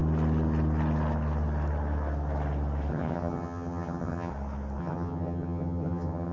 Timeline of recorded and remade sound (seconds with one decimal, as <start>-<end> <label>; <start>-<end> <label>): 0.0-2.9 recorded; 2.9-4.3 remade; 4.3-4.8 recorded; 4.8-6.3 remade